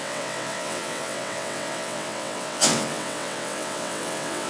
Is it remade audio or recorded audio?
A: remade